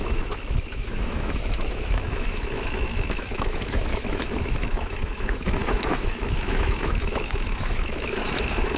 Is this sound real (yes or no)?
no